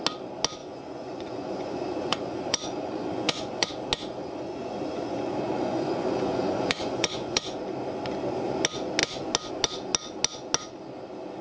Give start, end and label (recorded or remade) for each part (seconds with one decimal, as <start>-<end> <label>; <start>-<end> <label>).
0.0-0.6 recorded; 0.6-3.7 remade; 3.7-4.2 recorded; 4.2-7.6 remade; 7.6-11.4 recorded